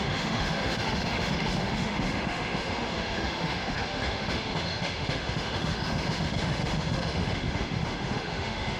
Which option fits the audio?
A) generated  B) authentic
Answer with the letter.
A